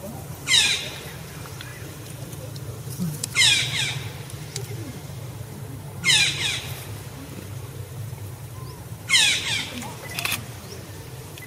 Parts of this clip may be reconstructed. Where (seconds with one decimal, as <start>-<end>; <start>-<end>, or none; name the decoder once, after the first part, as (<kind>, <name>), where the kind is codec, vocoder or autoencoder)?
0.0-11.5 (vocoder, BigVGAN v2)